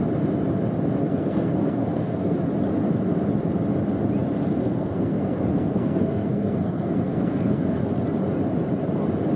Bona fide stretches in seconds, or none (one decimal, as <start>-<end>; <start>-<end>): 0.0-1.0; 2.4-4.6; 7.8-9.4